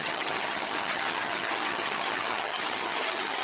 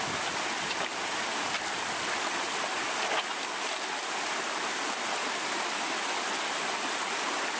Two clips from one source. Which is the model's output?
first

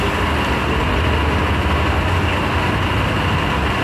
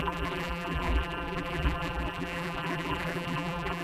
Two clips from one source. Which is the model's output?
second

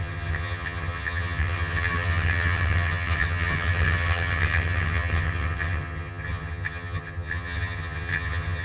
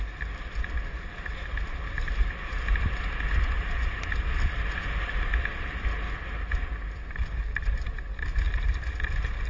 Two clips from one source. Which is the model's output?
first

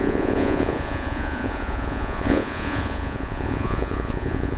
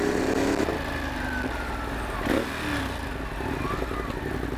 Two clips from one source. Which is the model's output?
first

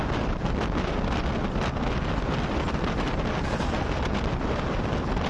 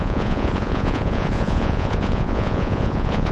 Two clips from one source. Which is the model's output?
second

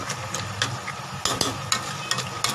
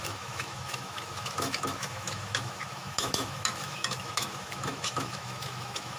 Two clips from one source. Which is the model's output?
second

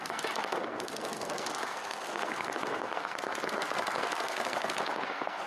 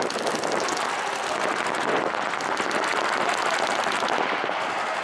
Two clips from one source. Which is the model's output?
first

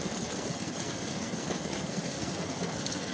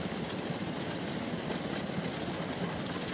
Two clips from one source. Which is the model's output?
first